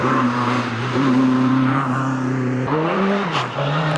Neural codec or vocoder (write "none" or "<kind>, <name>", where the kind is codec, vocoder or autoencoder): vocoder, BigVGAN v2